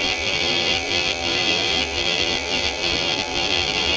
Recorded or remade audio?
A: remade